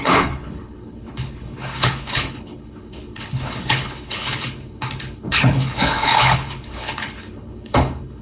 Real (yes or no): no